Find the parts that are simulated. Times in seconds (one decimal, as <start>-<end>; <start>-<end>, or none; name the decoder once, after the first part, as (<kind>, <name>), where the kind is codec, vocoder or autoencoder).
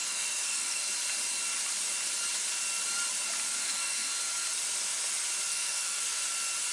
0.0-0.9 (codec, SNAC); 3.6-4.1; 5.5-6.3